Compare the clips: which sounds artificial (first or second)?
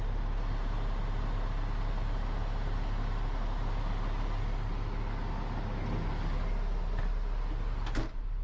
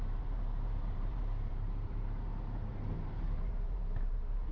second